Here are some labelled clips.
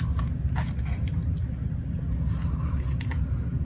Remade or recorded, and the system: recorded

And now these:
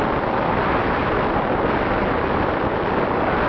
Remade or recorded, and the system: recorded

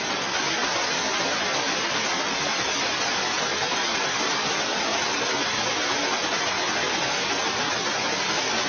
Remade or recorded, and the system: recorded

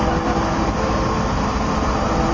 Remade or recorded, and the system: recorded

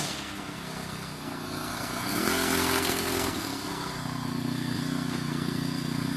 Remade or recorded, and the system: remade, codec, SNAC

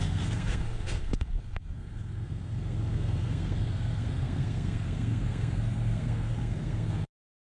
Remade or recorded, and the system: remade, codec, SNAC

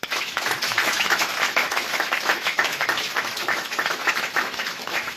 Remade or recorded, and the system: remade, autoencoder, DAC-VAE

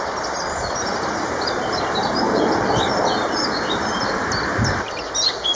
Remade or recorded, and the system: remade, vocoder, BigVGAN v2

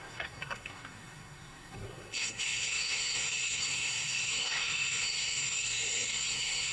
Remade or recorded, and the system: remade, codec, SNAC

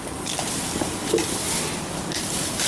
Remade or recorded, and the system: recorded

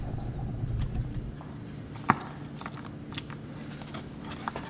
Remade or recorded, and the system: recorded